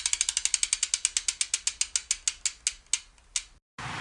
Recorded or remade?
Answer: recorded